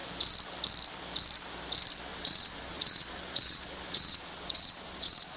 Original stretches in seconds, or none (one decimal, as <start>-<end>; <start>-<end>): 0.0-2.1